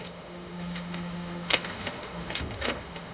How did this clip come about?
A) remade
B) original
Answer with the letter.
A